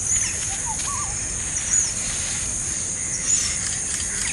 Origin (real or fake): fake